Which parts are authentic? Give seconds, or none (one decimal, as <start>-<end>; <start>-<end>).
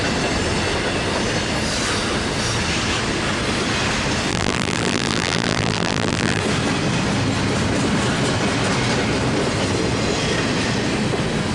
0.0-4.3; 6.4-11.5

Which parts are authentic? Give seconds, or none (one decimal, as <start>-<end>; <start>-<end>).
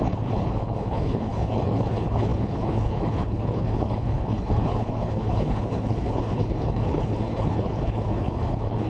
none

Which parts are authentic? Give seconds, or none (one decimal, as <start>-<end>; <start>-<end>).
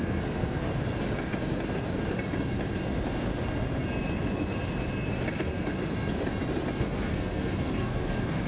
0.7-5.3; 5.7-6.8